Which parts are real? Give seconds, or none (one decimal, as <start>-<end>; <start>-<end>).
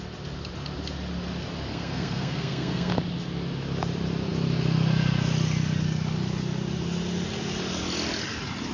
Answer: 0.0-1.7; 2.9-8.7